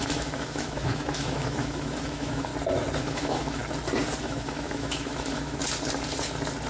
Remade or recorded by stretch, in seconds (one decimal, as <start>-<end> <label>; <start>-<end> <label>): 0.0-2.5 remade; 2.5-3.0 recorded; 3.0-3.6 remade; 3.6-4.2 recorded; 4.2-5.6 remade; 5.6-6.7 recorded